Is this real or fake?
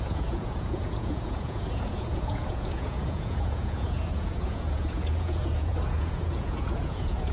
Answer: fake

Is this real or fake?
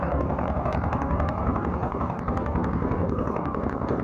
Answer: fake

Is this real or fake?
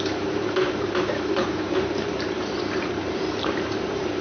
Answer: fake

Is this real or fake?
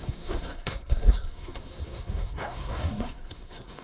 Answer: fake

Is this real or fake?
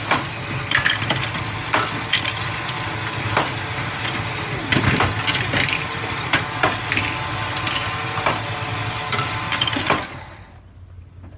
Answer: real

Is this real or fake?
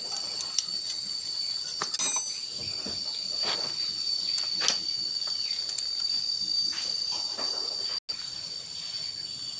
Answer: real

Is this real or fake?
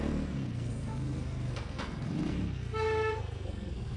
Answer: fake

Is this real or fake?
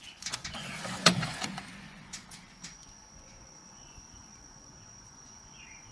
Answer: fake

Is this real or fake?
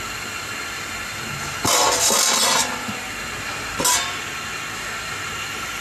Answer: fake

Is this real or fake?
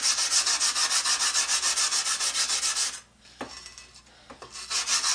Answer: real